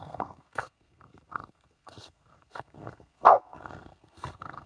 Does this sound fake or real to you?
fake